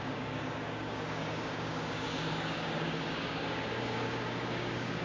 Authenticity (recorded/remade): remade